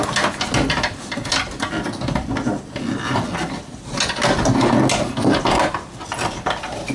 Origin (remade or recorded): recorded